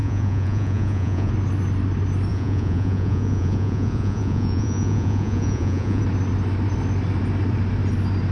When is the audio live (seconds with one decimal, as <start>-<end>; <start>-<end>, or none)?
1.3-2.3; 6.0-8.3